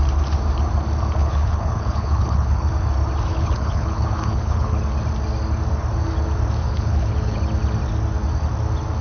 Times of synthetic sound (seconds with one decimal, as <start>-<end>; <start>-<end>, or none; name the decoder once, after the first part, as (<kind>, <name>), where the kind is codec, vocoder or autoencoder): 1.2-2.7 (codec, HILCodec); 3.3-4.8; 6.6-7.4